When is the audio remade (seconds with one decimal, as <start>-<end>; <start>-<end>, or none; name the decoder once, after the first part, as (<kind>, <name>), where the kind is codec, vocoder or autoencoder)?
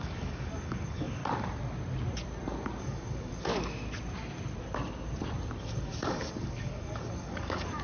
0.0-1.2 (codec, DAC); 2.8-3.5; 5.6-7.8